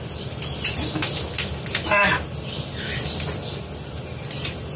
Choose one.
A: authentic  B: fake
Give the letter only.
A